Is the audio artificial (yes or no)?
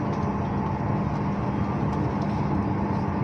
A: no